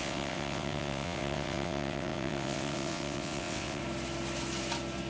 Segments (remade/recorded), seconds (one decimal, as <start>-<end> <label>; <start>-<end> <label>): 0.0-3.8 remade; 3.8-5.1 recorded